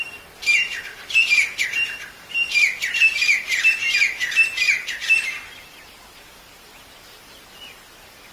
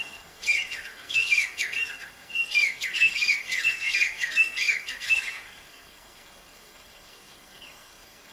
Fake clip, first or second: second